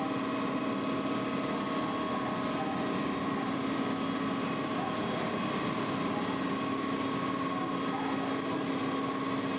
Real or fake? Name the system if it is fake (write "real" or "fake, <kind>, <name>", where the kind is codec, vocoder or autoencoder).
real